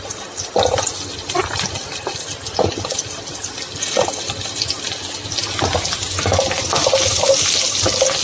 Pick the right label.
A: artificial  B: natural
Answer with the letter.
B